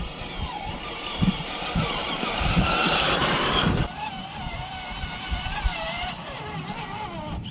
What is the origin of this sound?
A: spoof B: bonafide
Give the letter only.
A